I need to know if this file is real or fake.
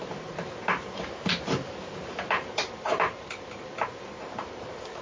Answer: fake